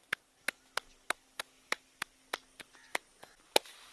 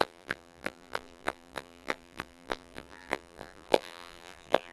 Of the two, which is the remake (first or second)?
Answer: second